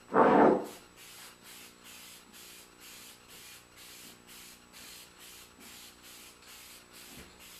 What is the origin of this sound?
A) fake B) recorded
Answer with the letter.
B